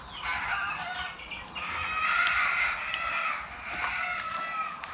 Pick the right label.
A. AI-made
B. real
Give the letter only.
B